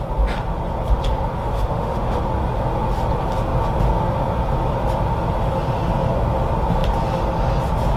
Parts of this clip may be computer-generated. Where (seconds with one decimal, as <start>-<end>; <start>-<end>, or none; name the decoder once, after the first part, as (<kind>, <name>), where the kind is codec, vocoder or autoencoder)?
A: 1.4-2.2 (autoencoder, DAC-VAE)